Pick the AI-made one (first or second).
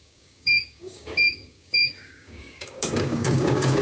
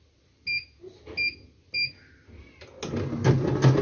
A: first